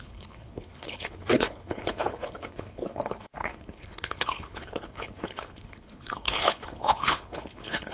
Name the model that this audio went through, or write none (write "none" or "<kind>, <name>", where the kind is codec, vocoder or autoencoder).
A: codec, HILCodec